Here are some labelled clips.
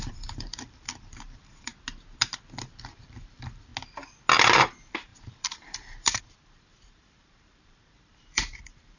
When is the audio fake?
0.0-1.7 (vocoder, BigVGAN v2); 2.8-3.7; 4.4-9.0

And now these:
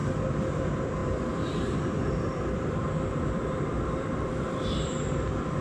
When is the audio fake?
0.6-5.6 (vocoder, BigVGAN v2)

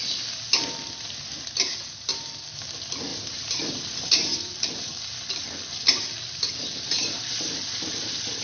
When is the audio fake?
3.1-8.4 (vocoder, BigVGAN v2)